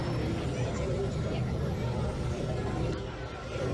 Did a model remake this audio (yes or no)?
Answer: no